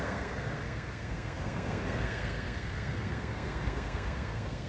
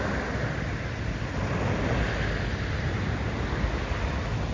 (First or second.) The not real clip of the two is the first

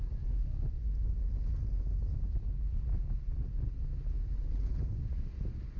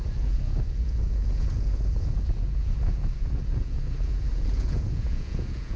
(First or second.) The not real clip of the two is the second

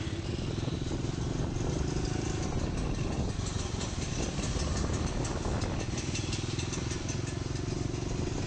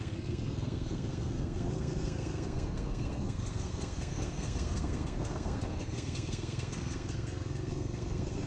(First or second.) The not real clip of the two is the second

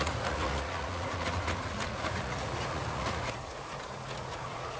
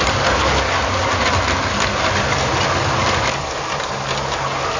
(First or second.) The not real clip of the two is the first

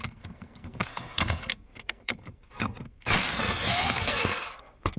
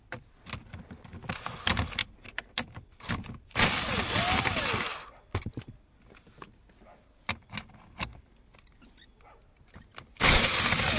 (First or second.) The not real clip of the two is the first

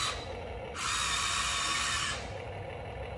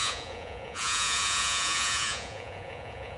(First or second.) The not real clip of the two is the second